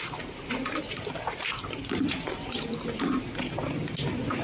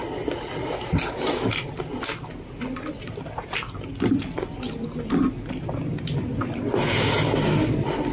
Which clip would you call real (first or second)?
second